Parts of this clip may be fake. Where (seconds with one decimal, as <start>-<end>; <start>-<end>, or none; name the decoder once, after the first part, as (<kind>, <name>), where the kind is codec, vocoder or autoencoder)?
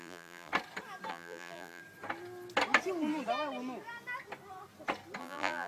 0.0-0.5 (vocoder, BigVGAN v2); 1.1-1.8; 5.2-5.7